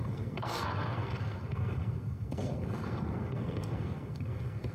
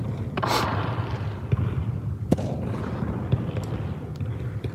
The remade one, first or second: first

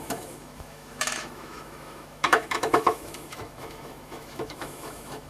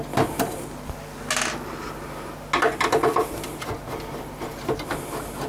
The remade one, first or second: first